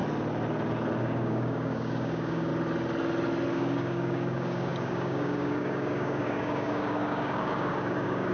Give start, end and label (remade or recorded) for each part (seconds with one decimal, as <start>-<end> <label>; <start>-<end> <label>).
0.0-1.0 recorded; 1.0-2.5 remade; 2.5-3.5 recorded; 3.5-8.3 remade